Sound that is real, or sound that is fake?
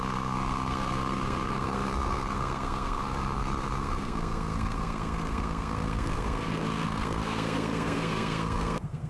fake